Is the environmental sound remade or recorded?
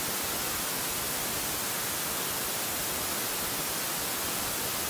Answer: recorded